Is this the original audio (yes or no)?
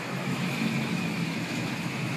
no